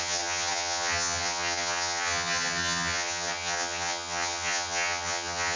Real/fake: fake